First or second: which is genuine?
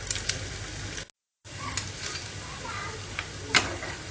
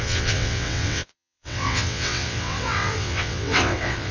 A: first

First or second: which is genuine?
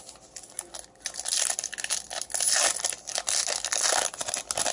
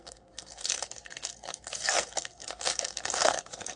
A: first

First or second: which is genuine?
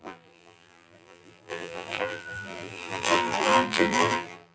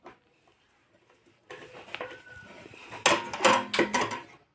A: second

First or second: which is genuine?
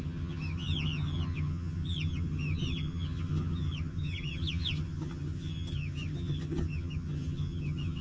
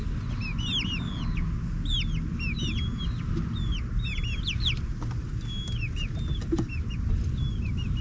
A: second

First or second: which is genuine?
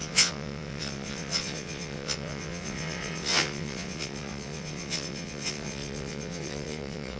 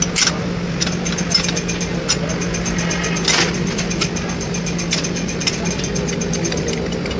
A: second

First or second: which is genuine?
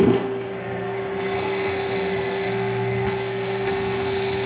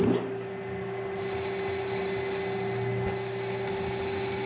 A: second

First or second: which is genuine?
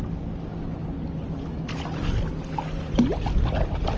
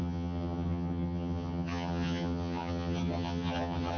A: first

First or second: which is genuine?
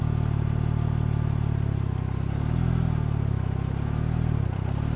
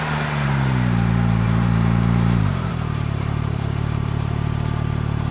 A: first